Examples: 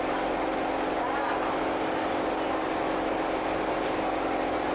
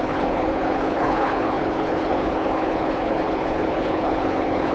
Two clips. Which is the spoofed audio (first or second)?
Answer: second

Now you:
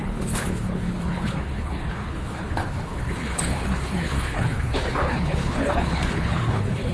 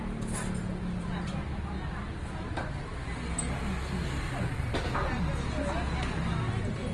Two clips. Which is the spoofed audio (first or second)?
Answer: first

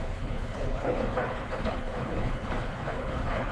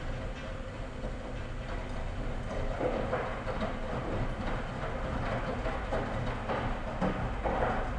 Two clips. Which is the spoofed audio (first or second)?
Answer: first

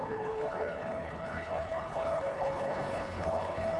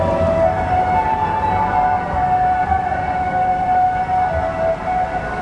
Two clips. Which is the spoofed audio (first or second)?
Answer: first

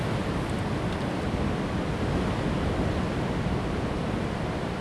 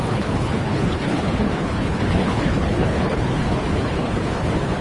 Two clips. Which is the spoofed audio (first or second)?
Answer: second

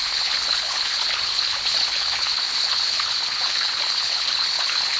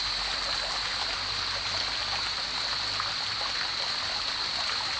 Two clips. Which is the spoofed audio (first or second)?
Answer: first